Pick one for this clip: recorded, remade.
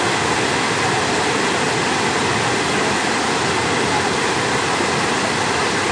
recorded